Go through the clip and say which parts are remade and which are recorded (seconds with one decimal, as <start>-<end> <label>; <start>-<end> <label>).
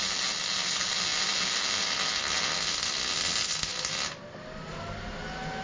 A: 0.0-5.6 recorded